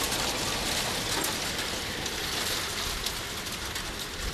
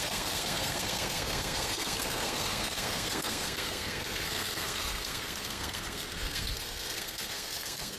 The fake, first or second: second